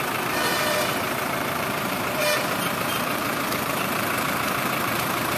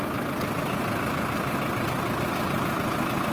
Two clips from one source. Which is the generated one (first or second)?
first